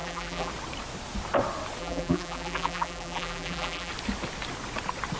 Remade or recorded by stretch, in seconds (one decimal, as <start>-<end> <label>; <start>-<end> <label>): 0.0-0.5 remade; 0.5-1.8 recorded; 1.8-3.9 remade; 3.9-5.2 recorded